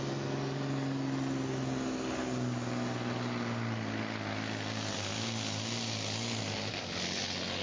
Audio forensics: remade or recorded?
recorded